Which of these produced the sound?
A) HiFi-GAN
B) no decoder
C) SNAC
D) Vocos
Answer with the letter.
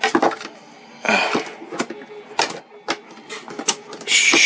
B